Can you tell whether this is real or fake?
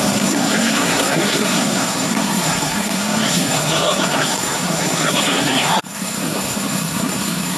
fake